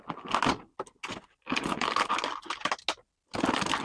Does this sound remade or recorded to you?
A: recorded